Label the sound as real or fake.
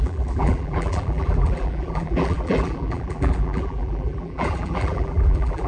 fake